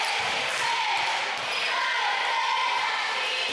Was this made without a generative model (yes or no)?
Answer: yes